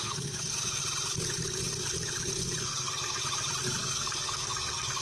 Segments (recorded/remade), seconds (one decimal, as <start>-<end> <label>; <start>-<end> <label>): 0.0-0.8 remade; 0.8-2.6 recorded; 2.6-3.2 remade; 3.2-3.8 recorded; 3.8-5.0 remade